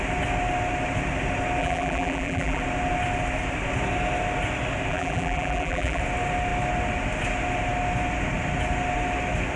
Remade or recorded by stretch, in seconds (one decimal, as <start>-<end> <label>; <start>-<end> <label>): 0.0-1.6 recorded; 1.6-2.6 remade; 2.6-4.9 recorded; 4.9-6.0 remade; 6.0-9.6 recorded